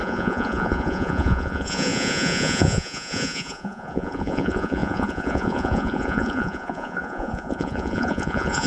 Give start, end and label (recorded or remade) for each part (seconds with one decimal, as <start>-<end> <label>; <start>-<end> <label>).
0.0-8.7 remade